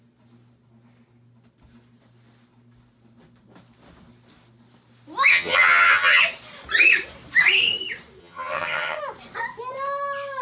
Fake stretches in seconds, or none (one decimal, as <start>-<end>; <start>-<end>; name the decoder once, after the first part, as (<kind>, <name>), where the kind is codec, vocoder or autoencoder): 5.3-6.2 (vocoder, HiFi-GAN); 8.2-9.0